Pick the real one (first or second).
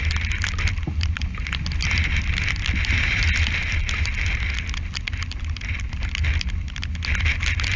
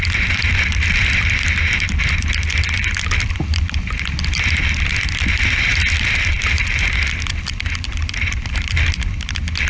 first